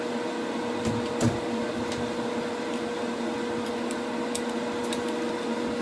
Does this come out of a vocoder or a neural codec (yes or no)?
no